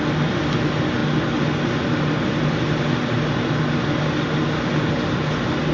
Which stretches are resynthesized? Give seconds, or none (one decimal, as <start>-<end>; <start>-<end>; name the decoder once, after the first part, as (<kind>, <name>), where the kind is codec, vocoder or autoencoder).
none